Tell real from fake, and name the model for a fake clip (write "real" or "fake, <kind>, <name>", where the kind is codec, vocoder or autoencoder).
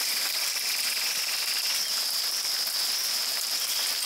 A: real